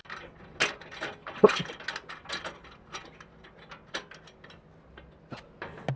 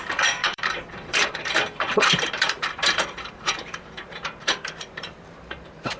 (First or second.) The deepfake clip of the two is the second